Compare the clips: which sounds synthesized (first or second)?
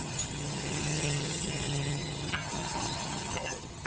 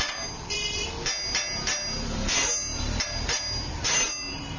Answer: first